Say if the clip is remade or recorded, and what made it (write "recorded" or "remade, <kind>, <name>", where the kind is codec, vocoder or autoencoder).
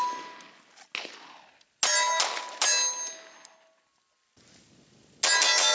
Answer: recorded